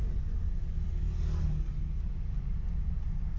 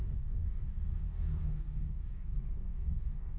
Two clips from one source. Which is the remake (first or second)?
second